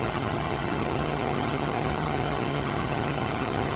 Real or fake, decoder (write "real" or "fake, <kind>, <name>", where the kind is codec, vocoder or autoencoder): fake, vocoder, HiFi-GAN